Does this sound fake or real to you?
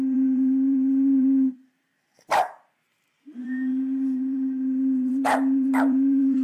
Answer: fake